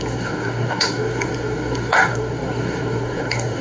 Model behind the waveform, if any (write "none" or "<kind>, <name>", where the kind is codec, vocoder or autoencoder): codec, SNAC